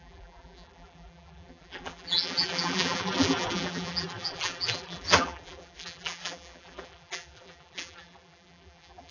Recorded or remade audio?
remade